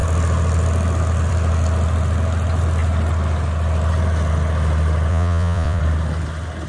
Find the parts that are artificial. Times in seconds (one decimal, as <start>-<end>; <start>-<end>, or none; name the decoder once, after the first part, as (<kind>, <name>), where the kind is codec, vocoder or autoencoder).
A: 5.1-5.8 (vocoder, Vocos)